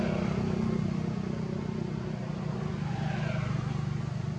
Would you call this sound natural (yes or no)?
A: yes